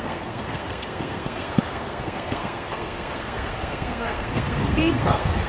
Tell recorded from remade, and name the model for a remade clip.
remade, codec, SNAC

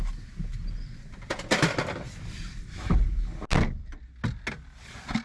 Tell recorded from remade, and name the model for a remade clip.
recorded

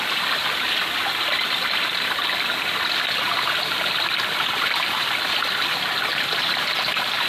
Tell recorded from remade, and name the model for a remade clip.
recorded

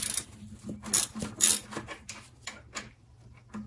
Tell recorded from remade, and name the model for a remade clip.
recorded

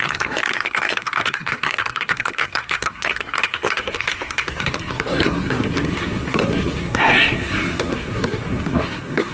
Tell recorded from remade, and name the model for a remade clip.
remade, codec, SNAC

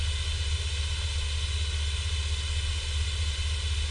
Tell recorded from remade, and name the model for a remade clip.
recorded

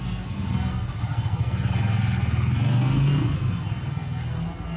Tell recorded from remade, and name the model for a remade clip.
remade, codec, SNAC